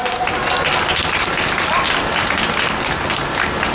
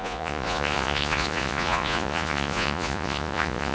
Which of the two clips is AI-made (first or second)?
second